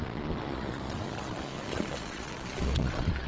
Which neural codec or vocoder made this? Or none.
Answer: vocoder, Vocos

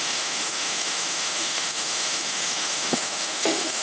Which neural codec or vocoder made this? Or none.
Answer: autoencoder, DAC-VAE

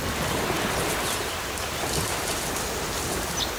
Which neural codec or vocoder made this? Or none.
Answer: none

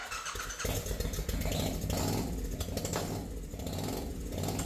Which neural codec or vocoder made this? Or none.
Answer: none